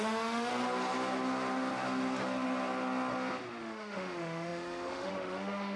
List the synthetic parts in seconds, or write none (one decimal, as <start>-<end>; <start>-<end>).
0.0-0.5; 3.6-5.8